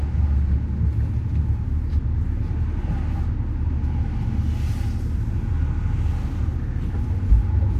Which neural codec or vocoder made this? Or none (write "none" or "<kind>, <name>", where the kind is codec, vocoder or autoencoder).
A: none